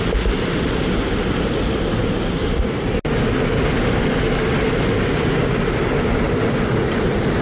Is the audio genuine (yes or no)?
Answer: yes